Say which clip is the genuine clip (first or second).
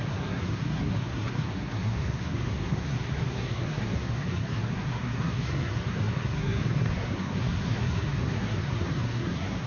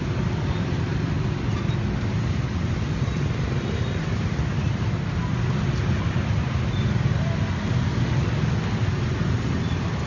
second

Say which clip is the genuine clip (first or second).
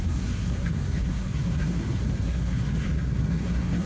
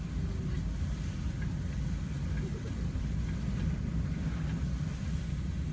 second